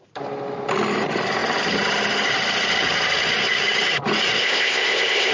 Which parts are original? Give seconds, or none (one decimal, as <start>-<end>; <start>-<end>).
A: 0.0-4.4